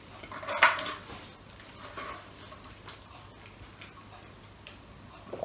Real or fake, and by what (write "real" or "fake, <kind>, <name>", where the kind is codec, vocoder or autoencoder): real